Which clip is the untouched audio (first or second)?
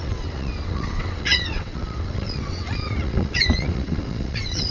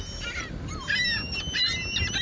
second